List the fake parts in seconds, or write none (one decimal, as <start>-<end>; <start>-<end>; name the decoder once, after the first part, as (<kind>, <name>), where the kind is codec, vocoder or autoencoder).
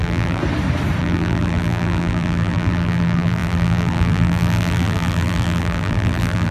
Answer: 0.0-0.4 (vocoder, BigVGAN v2); 1.0-6.5